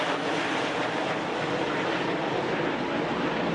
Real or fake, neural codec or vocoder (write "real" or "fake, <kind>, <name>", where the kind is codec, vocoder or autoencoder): real